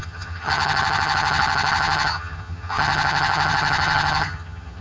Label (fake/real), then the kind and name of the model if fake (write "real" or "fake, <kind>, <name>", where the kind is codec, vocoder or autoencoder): fake, vocoder, HiFi-GAN